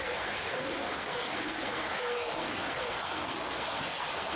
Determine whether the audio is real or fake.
fake